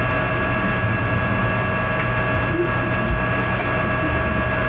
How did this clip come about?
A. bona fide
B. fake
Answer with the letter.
A